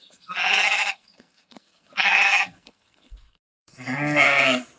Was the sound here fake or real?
fake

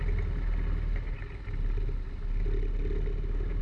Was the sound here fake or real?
real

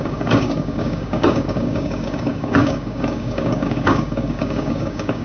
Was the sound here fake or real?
fake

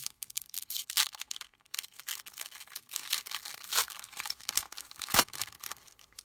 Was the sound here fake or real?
fake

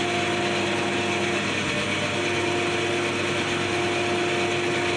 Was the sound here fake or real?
real